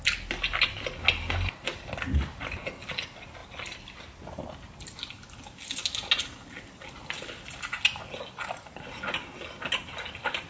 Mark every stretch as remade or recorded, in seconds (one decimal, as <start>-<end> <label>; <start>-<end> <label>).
0.0-10.5 recorded